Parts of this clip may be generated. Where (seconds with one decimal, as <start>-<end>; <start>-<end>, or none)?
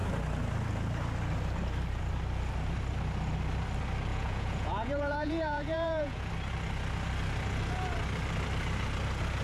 4.1-6.3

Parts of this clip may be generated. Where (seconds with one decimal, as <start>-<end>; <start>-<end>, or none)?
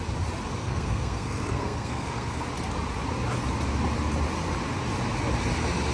0.6-2.4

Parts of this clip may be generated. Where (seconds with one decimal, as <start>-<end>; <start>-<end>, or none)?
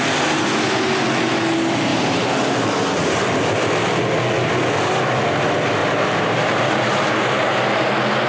1.9-3.2; 5.8-7.9